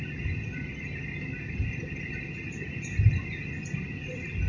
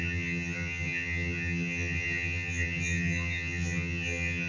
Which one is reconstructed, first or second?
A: second